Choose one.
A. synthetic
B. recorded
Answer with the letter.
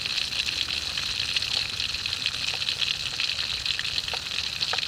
B